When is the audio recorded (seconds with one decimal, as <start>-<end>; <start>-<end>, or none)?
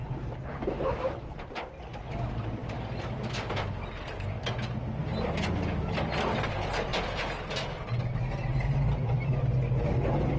0.0-10.4